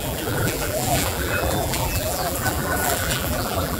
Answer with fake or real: fake